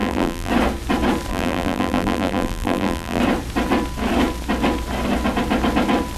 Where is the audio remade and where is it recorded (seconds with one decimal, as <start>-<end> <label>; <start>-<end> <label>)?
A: 0.0-0.5 remade; 0.5-1.3 recorded; 1.3-3.2 remade; 3.2-6.2 recorded